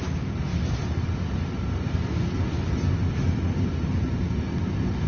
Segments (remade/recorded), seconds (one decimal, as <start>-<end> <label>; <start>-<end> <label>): 0.0-5.1 recorded